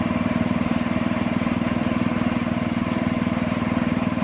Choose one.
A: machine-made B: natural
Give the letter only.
A